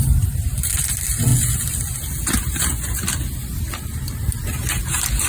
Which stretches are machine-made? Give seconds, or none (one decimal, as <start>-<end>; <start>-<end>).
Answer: none